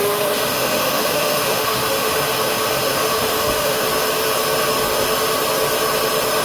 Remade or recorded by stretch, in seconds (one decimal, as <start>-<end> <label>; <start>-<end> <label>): 0.0-3.8 remade; 3.8-6.4 recorded